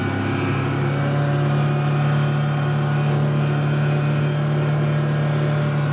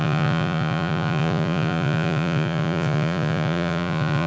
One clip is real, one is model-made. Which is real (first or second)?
first